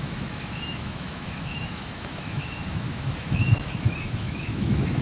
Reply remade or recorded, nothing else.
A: remade